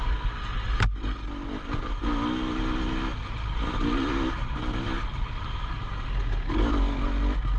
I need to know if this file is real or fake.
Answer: real